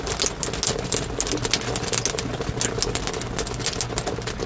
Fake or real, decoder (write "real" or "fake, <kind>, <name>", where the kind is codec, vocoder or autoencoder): real